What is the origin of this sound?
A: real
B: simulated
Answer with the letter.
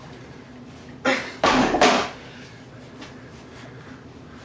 A